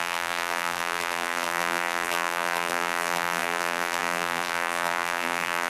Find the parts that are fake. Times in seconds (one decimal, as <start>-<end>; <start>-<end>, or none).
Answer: 0.0-5.7